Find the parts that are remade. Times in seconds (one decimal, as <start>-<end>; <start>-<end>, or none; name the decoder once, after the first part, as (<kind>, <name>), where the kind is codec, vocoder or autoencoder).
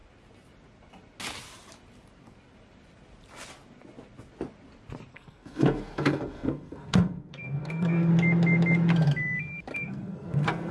5.1-8.1 (codec, SNAC); 9.7-10.7